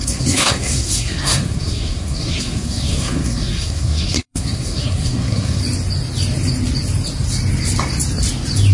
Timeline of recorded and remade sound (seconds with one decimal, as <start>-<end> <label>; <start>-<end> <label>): 0.0-5.6 remade; 5.6-8.7 recorded